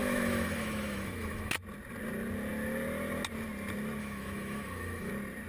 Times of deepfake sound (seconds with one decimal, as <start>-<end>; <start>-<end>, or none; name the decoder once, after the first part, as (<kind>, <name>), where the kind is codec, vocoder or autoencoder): 0.0-1.5 (autoencoder, DAC-VAE); 4.0-5.1